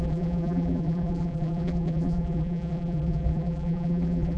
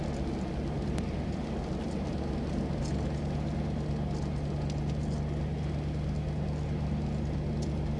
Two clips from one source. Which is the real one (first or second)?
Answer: second